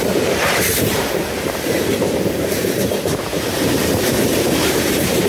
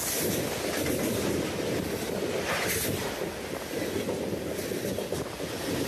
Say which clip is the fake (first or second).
first